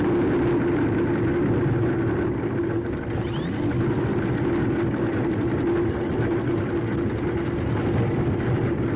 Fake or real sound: real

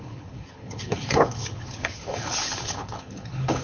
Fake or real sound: fake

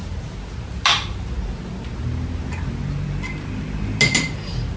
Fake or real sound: real